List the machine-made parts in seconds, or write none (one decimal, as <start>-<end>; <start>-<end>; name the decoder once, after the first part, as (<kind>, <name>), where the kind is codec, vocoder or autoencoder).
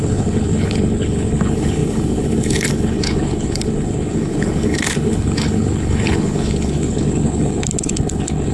0.0-8.5 (codec, HILCodec)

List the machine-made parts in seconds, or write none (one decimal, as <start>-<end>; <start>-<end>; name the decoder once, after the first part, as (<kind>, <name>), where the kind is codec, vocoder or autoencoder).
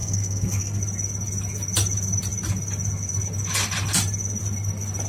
0.0-0.8 (codec, SNAC)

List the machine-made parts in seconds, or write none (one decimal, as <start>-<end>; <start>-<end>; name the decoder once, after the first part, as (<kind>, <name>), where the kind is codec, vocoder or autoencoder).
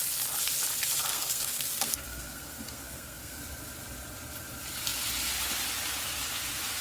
1.1-3.4 (codec, SNAC)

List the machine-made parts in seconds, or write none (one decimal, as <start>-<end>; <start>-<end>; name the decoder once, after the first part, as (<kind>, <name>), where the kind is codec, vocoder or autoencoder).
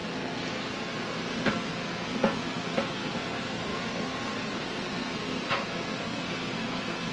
0.0-7.1 (codec, SNAC)